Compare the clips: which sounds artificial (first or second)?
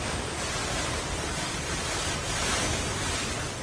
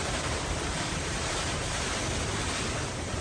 second